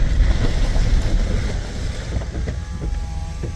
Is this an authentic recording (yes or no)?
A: yes